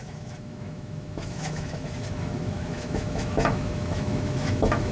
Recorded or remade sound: remade